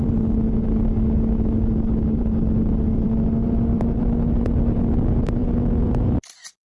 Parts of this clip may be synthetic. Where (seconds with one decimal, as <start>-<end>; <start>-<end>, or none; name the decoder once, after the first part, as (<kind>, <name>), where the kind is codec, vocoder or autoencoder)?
0.0-5.4 (vocoder, BigVGAN v2); 6.3-6.7